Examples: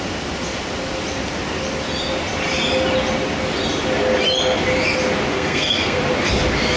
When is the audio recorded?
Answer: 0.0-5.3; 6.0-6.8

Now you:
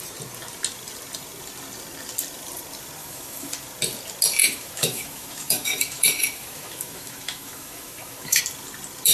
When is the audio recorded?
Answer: 0.0-3.0; 3.5-4.4; 8.4-9.1